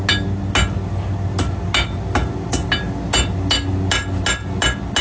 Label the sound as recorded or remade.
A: recorded